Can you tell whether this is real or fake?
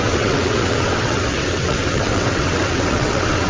fake